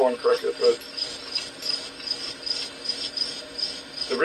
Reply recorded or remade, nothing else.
recorded